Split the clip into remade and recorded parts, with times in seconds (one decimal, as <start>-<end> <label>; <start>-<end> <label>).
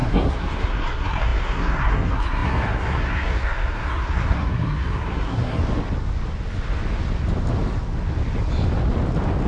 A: 0.0-5.6 remade; 5.6-9.5 recorded